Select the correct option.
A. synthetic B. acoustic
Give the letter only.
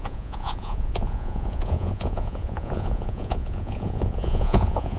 A